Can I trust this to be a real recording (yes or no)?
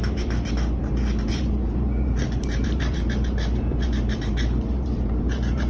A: no